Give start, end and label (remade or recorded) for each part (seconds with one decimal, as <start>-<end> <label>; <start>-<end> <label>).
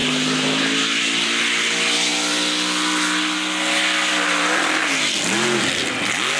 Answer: 0.0-6.4 recorded